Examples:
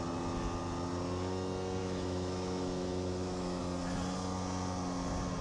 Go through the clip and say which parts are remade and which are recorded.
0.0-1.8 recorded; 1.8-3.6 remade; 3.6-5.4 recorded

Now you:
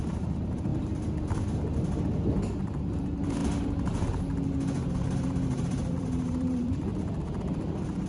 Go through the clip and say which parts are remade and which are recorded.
0.0-0.7 remade; 0.7-2.8 recorded; 2.8-3.4 remade; 3.4-4.9 recorded; 4.9-6.9 remade; 6.9-8.1 recorded